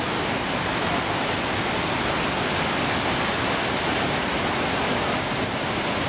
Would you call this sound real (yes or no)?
yes